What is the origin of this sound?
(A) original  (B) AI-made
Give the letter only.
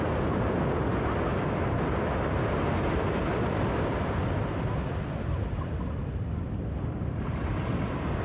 A